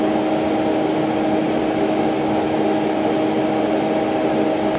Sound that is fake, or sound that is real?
real